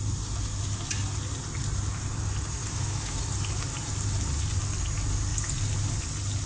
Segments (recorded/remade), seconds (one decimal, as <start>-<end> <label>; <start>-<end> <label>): 0.0-2.6 recorded; 2.6-3.2 remade; 3.2-6.5 recorded